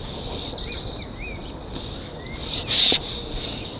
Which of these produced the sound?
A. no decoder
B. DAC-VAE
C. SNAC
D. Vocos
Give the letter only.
A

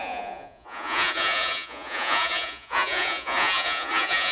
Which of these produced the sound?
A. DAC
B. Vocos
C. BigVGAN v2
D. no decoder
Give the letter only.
B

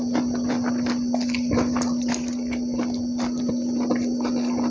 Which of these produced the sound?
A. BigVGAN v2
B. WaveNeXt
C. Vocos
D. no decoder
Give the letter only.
D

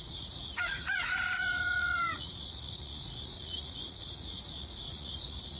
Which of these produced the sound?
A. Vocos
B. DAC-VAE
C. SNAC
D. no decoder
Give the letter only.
A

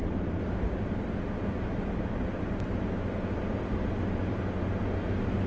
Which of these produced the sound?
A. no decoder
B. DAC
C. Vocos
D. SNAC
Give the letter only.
A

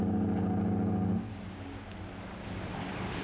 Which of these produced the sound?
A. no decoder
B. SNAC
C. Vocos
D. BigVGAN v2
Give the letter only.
A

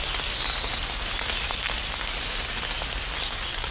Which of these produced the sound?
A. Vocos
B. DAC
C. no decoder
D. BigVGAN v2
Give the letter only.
C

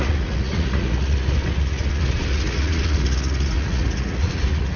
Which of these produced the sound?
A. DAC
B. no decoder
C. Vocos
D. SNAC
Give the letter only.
C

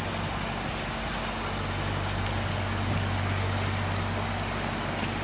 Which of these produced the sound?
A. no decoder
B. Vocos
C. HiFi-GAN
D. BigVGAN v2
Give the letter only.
A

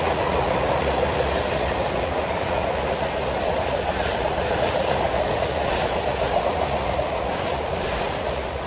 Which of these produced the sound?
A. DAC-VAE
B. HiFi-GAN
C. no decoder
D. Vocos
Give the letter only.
D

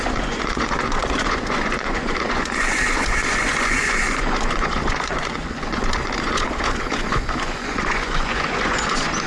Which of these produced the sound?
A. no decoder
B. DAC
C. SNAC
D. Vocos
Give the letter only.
D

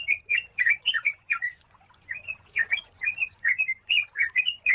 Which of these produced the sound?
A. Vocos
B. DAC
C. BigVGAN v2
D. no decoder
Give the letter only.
A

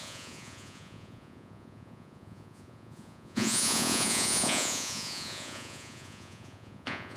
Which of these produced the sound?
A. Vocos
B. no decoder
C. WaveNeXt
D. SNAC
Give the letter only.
A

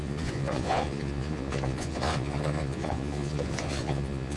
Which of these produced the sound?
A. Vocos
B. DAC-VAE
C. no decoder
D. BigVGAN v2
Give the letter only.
A